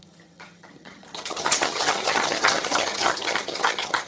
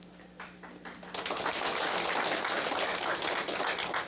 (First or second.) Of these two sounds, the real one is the second